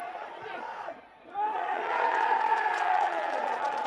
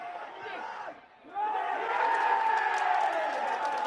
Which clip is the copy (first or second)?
first